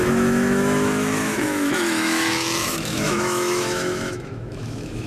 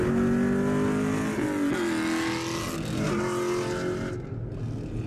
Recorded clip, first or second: second